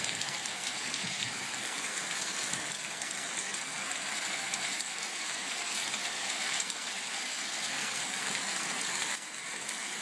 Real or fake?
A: fake